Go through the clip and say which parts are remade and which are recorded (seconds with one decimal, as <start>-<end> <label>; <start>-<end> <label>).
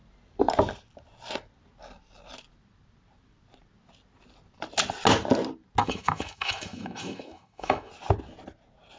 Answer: 0.0-5.8 recorded; 5.8-7.9 remade; 7.9-9.0 recorded